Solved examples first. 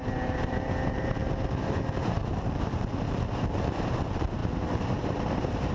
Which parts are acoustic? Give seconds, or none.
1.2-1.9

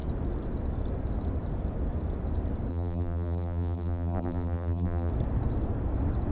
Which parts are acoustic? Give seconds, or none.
0.0-2.7; 5.1-6.3

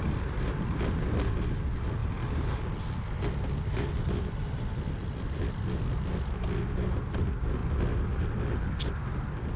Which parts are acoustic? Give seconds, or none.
0.0-2.0; 2.6-5.0; 6.1-9.6

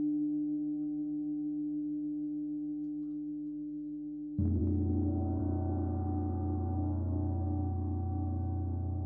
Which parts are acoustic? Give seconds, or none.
0.0-9.1

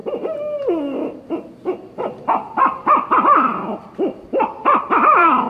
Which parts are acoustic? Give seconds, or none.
0.0-3.1